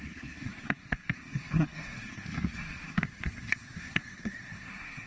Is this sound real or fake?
fake